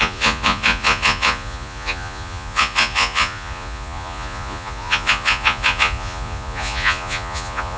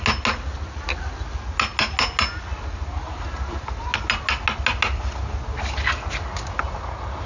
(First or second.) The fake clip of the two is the first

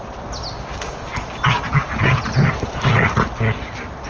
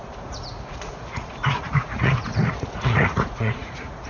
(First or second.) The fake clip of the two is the second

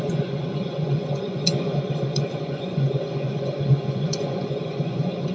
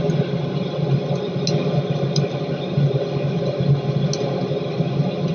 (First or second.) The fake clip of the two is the first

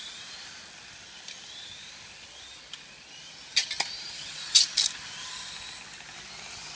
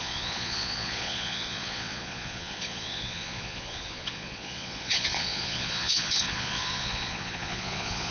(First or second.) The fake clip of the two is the second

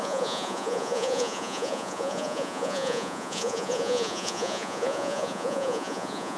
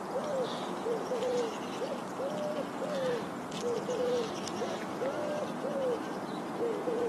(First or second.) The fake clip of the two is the first